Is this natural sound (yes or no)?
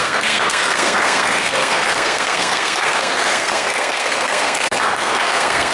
no